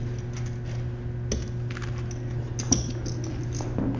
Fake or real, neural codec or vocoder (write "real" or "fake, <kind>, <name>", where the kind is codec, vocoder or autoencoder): real